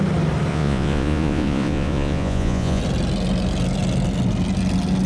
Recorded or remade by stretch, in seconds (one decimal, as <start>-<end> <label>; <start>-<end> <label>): 0.0-0.5 recorded; 0.5-2.8 remade; 2.8-5.1 recorded